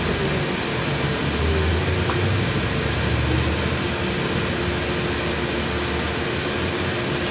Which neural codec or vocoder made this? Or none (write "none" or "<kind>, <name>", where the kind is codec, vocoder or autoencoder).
none